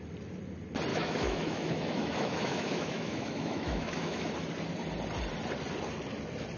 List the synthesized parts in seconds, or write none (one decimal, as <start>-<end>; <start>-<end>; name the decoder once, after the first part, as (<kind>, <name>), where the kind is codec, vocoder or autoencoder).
0.9-4.3 (autoencoder, DAC-VAE)

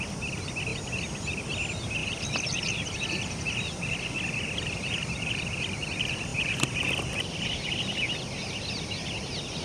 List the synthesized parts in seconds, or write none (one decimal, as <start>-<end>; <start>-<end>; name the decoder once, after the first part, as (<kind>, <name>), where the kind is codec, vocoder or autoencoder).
0.7-1.5 (vocoder, BigVGAN v2); 2.0-5.6; 6.3-7.0

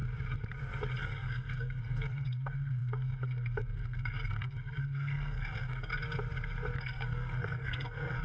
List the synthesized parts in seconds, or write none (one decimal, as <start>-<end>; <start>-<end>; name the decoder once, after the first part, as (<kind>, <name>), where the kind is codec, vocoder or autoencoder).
1.0-5.9 (codec, SNAC); 6.8-8.2

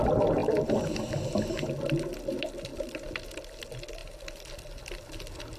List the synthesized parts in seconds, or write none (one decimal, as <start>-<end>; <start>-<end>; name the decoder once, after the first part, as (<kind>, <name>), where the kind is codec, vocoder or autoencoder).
none